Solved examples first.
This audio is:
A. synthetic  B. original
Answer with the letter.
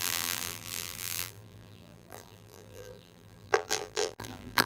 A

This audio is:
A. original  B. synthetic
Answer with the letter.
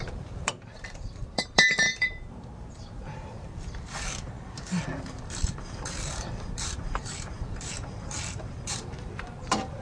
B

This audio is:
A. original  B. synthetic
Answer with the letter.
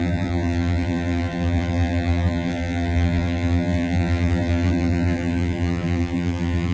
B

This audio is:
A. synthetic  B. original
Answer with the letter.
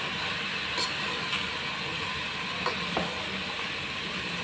B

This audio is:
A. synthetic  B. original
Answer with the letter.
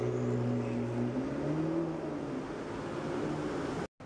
B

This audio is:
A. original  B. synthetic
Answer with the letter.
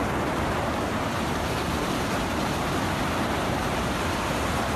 B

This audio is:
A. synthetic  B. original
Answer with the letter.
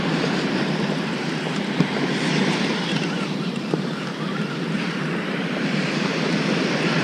A